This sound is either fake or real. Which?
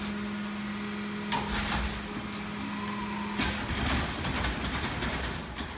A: real